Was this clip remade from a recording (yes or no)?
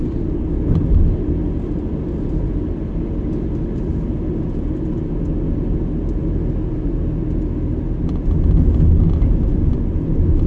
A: no